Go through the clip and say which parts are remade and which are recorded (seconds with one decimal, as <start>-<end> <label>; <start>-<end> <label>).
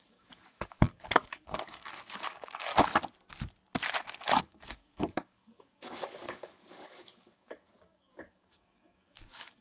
0.0-2.7 remade; 2.7-4.4 recorded; 4.4-9.6 remade